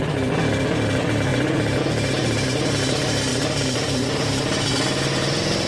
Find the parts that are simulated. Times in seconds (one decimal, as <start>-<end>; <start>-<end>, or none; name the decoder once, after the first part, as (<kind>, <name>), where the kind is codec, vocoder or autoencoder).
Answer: 3.3-4.4 (vocoder, BigVGAN v2)